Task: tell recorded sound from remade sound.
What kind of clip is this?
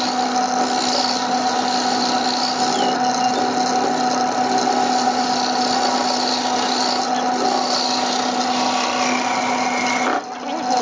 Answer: recorded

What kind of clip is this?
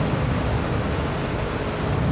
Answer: recorded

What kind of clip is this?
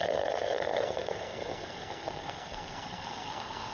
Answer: remade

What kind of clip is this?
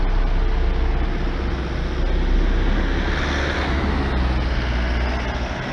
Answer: recorded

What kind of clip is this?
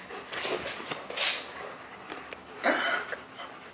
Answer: recorded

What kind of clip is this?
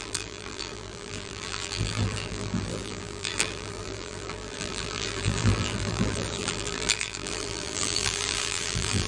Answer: remade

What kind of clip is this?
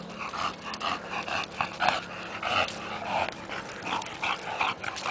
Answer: recorded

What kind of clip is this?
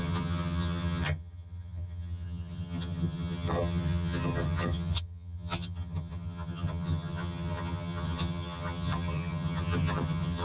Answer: remade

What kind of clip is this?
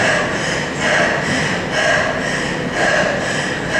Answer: recorded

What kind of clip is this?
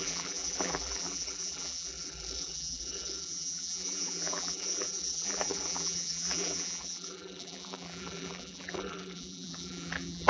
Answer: remade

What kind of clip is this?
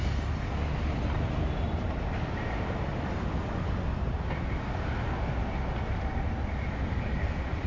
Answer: recorded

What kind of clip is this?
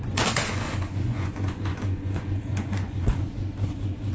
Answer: remade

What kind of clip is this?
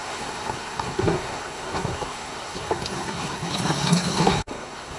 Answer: remade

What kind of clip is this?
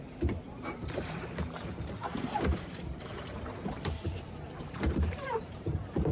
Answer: remade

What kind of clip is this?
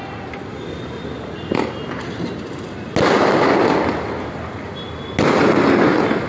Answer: recorded